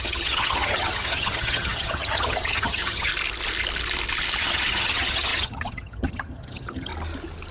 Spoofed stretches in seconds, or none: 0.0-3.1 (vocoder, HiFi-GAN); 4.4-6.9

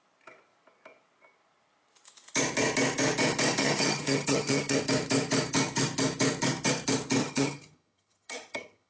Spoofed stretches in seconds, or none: 3.6-4.8 (vocoder, HiFi-GAN); 7.2-8.9

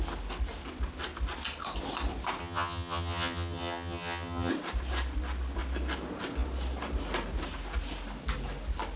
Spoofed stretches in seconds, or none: 2.4-4.5 (vocoder, HiFi-GAN)

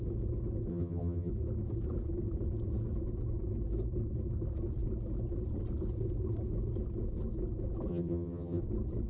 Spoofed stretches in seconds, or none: 0.7-1.3 (vocoder, HiFi-GAN); 7.9-8.6